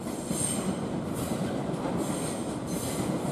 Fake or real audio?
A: real